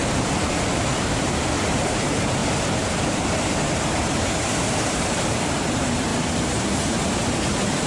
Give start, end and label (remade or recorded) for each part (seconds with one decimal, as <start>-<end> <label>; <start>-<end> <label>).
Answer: 0.0-0.7 recorded; 0.7-2.4 remade; 2.4-4.0 recorded; 4.0-7.9 remade